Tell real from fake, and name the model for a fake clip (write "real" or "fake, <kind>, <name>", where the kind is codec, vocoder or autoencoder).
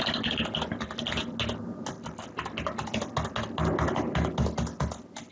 real